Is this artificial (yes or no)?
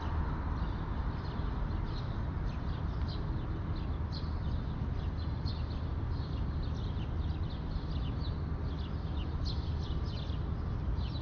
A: no